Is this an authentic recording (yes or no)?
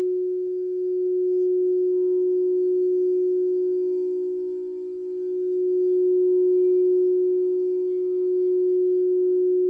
yes